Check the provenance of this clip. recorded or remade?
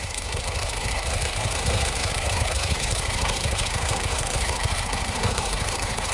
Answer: remade